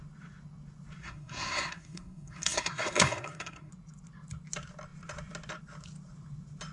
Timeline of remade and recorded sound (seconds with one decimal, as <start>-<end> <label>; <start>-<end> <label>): 0.0-1.0 recorded; 1.0-3.7 remade; 3.7-6.7 recorded